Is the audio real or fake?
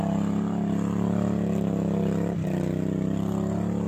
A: real